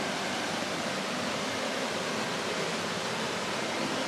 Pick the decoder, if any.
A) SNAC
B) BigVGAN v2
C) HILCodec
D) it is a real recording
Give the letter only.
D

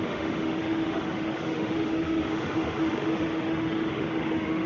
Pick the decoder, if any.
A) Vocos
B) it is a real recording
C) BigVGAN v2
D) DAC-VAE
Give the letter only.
D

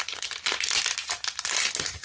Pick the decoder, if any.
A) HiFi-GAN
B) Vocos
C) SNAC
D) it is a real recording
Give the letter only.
D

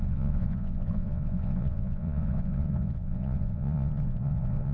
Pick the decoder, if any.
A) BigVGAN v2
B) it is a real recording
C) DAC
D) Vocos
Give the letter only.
D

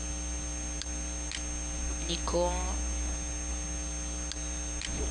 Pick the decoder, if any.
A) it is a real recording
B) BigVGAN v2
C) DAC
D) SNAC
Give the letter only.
A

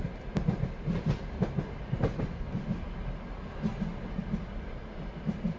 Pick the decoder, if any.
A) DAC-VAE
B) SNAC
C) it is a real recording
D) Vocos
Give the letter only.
C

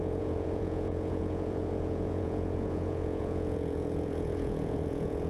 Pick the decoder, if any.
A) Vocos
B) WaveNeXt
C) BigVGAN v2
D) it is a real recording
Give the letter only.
A